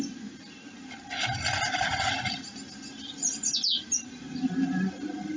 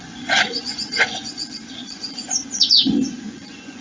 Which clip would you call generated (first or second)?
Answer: second